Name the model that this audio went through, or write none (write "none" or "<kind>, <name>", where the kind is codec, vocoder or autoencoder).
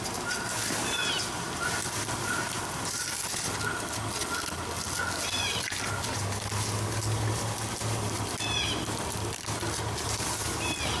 none